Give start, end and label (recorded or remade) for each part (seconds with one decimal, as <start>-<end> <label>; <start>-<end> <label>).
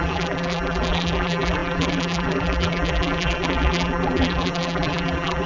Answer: 0.0-5.5 remade